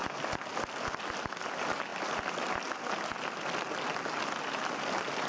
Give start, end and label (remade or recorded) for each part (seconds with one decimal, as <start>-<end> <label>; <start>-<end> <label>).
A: 0.0-5.3 recorded